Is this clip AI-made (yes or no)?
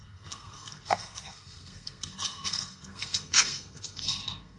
yes